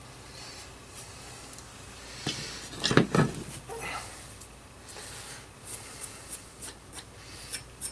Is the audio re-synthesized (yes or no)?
no